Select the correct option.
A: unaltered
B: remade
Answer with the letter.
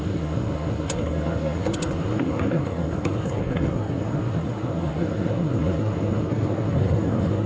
B